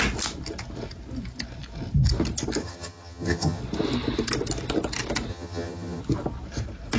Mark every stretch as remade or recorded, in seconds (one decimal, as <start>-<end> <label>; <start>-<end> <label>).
0.0-2.6 recorded; 2.6-3.6 remade; 3.6-5.3 recorded; 5.3-6.0 remade; 6.0-7.0 recorded